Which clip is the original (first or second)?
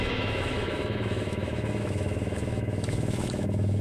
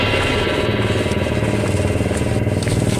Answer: second